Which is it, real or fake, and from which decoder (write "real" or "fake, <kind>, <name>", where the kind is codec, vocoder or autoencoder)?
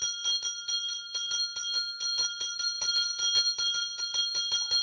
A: real